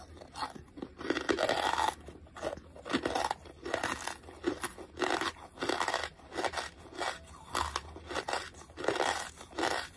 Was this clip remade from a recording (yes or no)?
no